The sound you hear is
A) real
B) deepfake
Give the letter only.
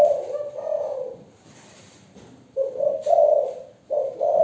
A